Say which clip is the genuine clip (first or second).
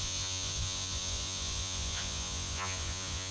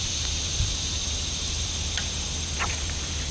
second